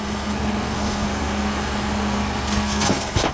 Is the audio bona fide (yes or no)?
no